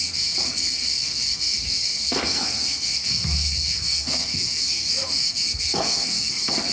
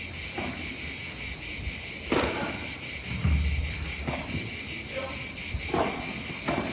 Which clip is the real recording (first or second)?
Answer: second